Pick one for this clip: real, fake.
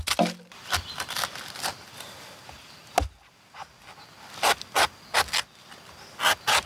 real